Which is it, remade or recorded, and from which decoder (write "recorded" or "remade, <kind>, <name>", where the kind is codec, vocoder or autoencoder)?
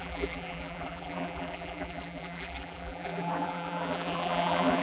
remade, vocoder, BigVGAN v2